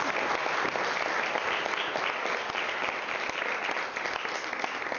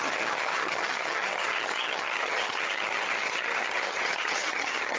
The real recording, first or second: first